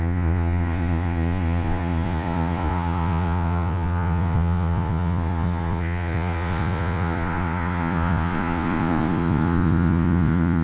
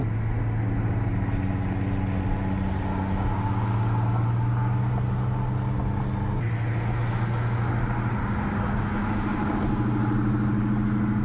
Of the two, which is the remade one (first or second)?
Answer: first